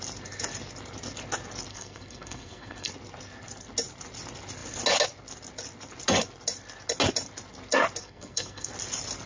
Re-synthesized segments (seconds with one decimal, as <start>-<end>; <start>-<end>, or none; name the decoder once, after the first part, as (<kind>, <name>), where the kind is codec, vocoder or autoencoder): 1.7-2.9 (codec, SNAC); 8.0-8.7